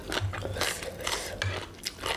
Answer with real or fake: real